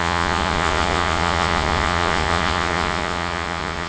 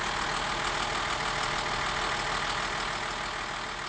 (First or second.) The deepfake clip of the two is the first